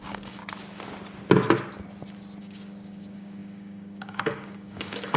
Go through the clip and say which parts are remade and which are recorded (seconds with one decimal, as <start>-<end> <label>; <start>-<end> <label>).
0.0-0.4 remade; 0.4-2.4 recorded; 2.4-5.2 remade

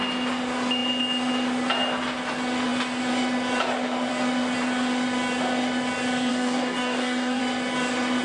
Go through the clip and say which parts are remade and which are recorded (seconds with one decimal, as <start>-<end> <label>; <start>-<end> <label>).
0.0-6.3 recorded; 6.3-7.4 remade; 7.4-8.2 recorded